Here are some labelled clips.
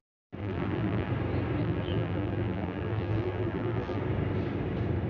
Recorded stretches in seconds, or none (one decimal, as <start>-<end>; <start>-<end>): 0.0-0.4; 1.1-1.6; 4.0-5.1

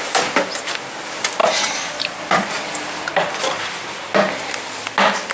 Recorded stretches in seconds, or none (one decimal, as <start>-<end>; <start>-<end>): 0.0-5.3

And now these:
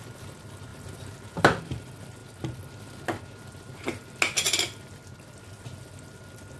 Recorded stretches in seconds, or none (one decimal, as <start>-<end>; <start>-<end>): 0.0-6.6

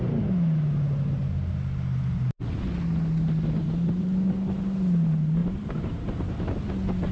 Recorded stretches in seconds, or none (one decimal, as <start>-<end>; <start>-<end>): 0.0-3.6; 4.3-5.4; 6.6-7.1